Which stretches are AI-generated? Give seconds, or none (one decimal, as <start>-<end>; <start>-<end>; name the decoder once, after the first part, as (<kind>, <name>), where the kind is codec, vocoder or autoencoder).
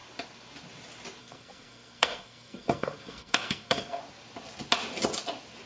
1.2-4.0 (codec, SNAC)